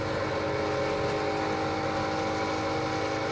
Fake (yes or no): no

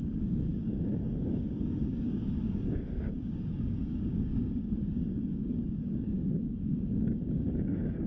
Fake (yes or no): yes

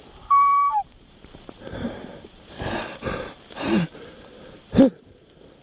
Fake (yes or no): yes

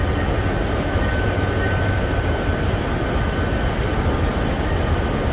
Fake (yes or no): no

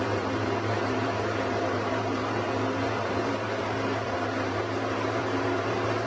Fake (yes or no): yes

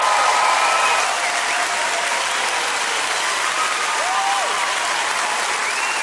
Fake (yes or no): no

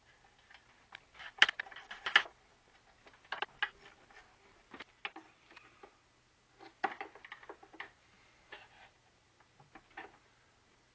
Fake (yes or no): no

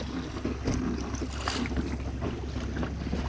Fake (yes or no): no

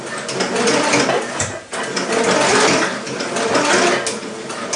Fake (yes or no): no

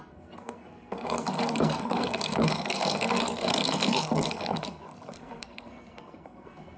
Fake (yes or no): yes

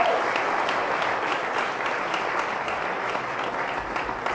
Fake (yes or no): no